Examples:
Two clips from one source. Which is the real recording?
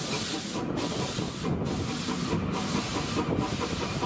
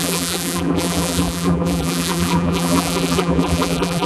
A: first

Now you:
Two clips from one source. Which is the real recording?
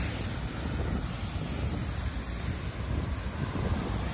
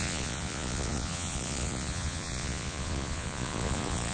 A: first